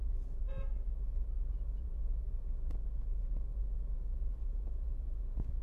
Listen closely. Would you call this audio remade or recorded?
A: remade